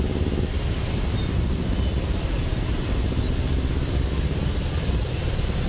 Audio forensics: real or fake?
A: real